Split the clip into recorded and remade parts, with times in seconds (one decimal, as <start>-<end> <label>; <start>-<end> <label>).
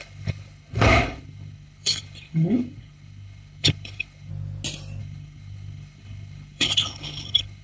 0.0-4.3 remade; 4.3-5.0 recorded; 5.0-7.6 remade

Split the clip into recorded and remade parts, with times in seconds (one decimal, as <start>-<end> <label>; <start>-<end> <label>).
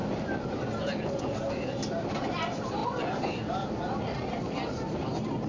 0.0-5.5 recorded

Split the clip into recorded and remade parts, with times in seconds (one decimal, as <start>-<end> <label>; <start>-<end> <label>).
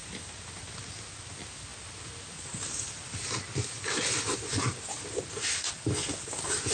0.0-0.7 remade; 0.7-6.7 recorded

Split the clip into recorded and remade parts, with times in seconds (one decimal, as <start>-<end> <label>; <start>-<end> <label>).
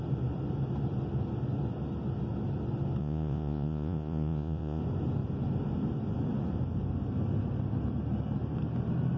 0.0-3.0 recorded; 3.0-4.8 remade; 4.8-9.2 recorded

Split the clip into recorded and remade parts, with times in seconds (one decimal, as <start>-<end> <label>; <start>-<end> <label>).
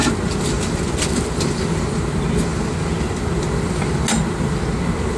0.0-5.2 recorded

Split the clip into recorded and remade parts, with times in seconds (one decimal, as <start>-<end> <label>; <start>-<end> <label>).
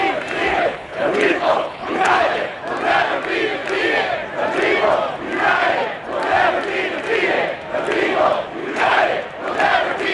0.0-0.5 recorded; 0.5-2.6 remade; 2.6-8.6 recorded; 8.6-9.1 remade; 9.1-10.1 recorded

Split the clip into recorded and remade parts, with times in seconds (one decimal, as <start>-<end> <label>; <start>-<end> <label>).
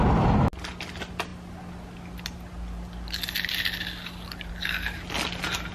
0.0-5.7 recorded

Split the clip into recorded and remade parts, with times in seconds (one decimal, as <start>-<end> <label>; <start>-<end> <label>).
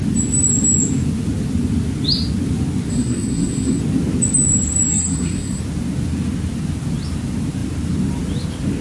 0.0-2.9 recorded; 2.9-3.8 remade; 3.8-4.9 recorded; 4.9-5.6 remade; 5.6-8.8 recorded